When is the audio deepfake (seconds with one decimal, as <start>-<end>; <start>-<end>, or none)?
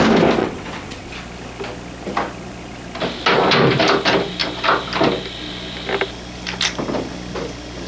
0.4-1.1